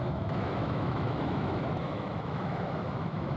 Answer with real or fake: fake